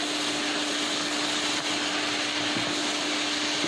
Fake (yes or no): no